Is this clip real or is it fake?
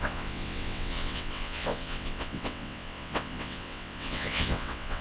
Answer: fake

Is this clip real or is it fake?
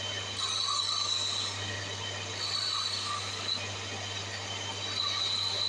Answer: real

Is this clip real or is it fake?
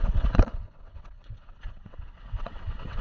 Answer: fake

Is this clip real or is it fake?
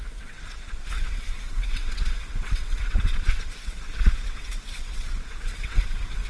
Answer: fake